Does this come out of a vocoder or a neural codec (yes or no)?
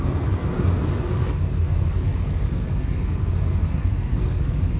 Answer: yes